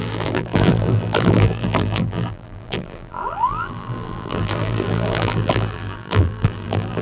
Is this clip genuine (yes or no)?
no